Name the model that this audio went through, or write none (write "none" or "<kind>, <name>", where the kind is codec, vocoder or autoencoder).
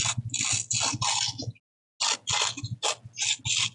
none